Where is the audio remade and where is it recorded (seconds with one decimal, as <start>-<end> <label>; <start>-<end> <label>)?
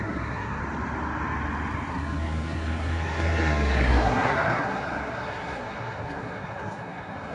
0.0-0.6 remade; 0.6-1.9 recorded; 1.9-7.3 remade